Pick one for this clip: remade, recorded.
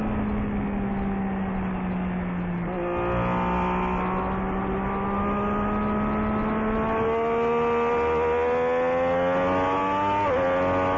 recorded